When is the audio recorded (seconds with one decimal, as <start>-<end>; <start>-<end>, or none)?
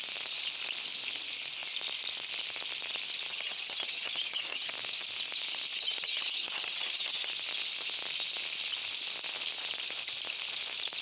0.0-3.3; 4.7-5.7; 7.3-11.0